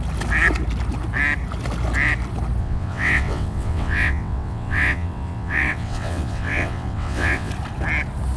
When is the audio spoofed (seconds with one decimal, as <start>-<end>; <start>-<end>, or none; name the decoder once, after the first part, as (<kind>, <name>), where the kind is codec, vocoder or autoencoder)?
2.6-7.5 (vocoder, WaveNeXt)